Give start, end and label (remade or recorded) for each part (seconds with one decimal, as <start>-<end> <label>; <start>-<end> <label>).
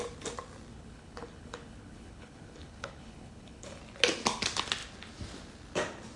0.0-0.7 recorded; 0.7-3.8 remade; 3.8-6.2 recorded